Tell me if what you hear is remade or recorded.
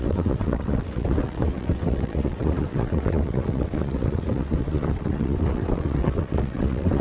remade